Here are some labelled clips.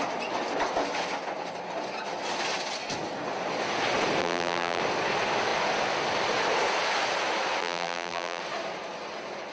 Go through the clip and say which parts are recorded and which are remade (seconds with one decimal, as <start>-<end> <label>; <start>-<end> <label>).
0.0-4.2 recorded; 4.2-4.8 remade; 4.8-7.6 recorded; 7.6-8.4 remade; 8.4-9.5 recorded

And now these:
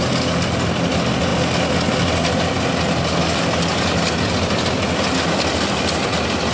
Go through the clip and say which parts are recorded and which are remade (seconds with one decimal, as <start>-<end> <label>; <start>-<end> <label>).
0.0-6.5 recorded

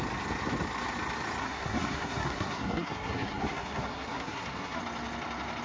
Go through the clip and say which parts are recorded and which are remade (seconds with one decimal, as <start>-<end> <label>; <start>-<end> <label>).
0.0-1.4 recorded; 1.4-4.8 remade; 4.8-5.6 recorded

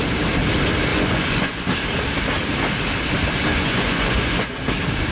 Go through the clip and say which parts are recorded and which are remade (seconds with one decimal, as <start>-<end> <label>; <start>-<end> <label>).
0.0-0.9 recorded; 0.9-1.7 remade; 1.7-3.5 recorded; 3.5-4.6 remade; 4.6-5.1 recorded